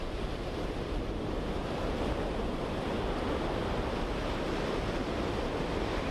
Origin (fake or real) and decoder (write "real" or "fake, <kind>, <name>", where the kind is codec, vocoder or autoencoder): real